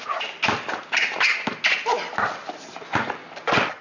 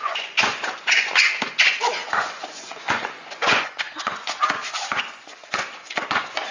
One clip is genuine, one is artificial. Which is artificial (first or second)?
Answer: second